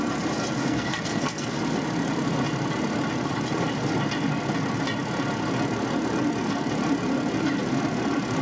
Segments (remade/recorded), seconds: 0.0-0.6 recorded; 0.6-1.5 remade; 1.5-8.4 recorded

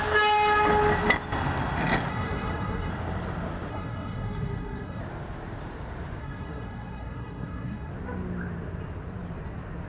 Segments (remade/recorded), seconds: 0.0-2.1 recorded; 2.1-2.9 remade; 2.9-3.7 recorded; 3.7-5.0 remade; 5.0-6.2 recorded; 6.2-7.9 remade; 7.9-9.9 recorded